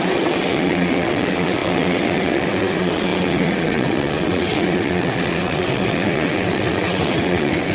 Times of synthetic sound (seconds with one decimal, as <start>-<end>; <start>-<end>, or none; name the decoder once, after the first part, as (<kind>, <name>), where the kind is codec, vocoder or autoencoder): 0.0-7.7 (vocoder, WaveNeXt)